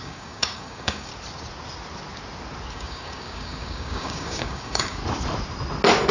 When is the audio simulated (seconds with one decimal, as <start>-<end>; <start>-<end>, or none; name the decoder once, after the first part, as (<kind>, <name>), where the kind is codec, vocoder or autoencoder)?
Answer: 0.0-1.1 (codec, DAC); 2.7-5.0

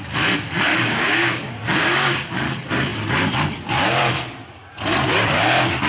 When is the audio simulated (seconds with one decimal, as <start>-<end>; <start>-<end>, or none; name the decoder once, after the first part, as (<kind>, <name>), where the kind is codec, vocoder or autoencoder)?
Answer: 0.7-2.3 (codec, DAC)

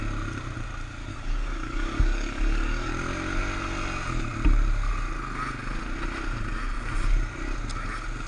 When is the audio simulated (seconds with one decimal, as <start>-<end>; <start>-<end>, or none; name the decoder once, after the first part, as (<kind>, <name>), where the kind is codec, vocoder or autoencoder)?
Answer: 1.1-2.9 (codec, DAC)

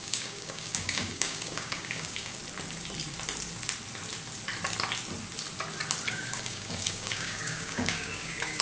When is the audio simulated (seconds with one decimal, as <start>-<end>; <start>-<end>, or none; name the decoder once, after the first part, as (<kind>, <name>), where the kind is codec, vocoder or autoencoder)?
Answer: 0.0-2.4 (codec, DAC); 6.1-8.6